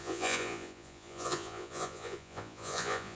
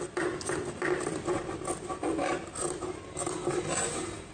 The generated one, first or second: first